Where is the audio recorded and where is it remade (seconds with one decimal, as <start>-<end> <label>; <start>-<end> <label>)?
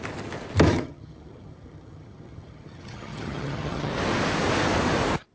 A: 0.0-0.7 recorded; 0.7-3.9 remade; 3.9-5.3 recorded